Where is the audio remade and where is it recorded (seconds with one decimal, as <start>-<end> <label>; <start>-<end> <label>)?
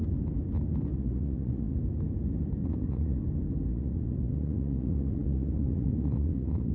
0.0-0.9 recorded; 0.9-1.8 remade; 1.8-2.6 recorded; 2.6-3.2 remade; 3.2-3.7 recorded; 3.7-6.7 remade